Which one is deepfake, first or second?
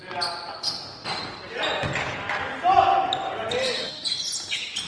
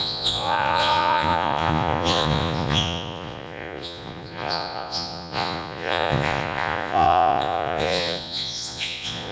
second